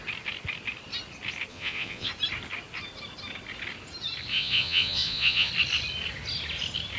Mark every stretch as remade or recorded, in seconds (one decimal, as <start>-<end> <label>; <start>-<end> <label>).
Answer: 0.0-1.5 recorded; 1.5-2.1 remade; 2.1-4.3 recorded; 4.3-5.5 remade; 5.5-7.0 recorded